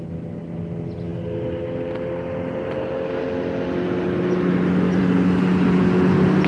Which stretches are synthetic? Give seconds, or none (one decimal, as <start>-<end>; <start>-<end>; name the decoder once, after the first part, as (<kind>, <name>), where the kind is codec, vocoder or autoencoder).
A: none